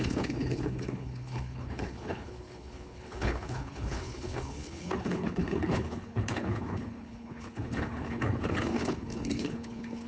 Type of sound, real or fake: fake